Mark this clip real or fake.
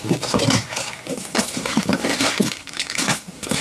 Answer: fake